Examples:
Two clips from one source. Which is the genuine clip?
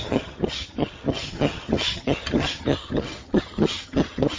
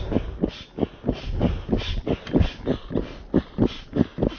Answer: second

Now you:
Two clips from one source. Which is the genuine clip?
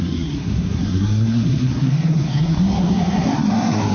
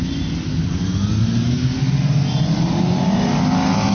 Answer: second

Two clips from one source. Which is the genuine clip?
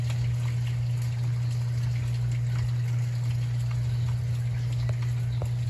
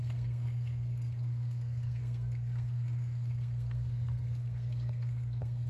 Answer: first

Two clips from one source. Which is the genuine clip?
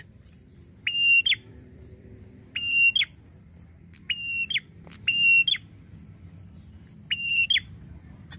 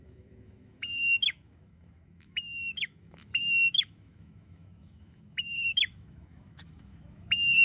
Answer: first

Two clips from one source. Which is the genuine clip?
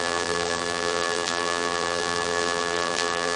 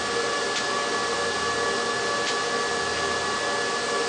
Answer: second